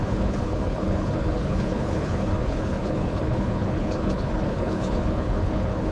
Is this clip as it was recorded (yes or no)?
no